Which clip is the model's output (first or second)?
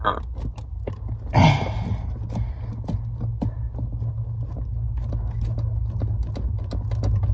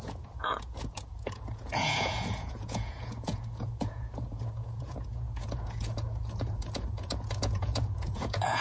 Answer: second